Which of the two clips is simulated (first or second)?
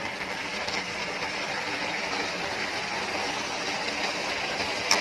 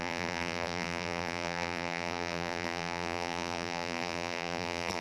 second